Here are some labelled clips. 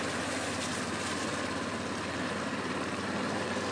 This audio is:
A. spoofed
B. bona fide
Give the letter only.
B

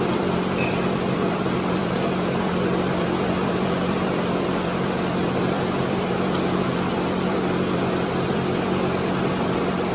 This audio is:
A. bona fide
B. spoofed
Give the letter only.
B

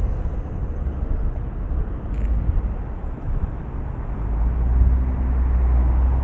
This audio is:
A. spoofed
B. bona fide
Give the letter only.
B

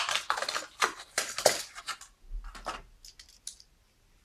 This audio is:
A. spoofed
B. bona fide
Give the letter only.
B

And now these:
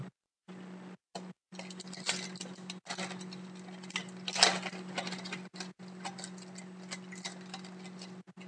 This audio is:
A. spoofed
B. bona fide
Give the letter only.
B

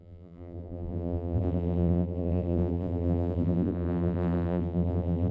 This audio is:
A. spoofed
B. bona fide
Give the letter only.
A